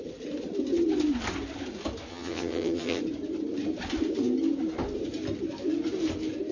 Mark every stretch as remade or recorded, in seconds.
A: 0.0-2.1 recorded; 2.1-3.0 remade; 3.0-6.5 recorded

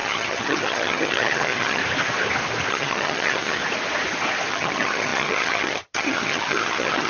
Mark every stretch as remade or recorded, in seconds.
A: 0.0-1.8 remade; 1.8-2.7 recorded; 2.7-3.6 remade; 3.6-4.5 recorded; 4.5-7.1 remade

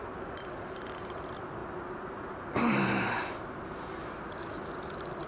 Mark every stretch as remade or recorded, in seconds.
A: 0.0-5.3 recorded

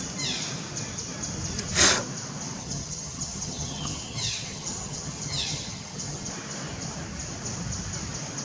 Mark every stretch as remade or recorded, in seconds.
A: 0.0-2.6 recorded; 2.6-6.3 remade; 6.3-8.4 recorded

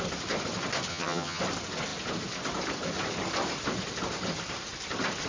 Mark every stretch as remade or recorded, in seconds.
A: 0.0-0.9 recorded; 0.9-1.4 remade; 1.4-5.3 recorded